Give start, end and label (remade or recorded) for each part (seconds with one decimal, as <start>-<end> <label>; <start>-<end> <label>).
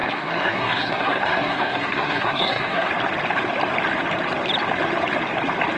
0.0-2.9 remade; 2.9-5.8 recorded